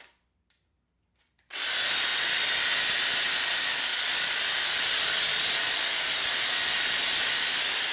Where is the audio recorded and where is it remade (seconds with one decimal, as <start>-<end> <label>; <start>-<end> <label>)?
0.0-7.9 recorded